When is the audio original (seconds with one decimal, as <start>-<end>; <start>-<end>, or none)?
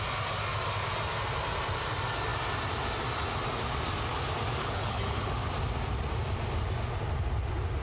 0.0-4.6; 5.3-7.8